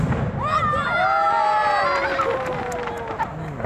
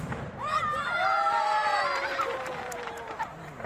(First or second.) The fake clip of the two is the second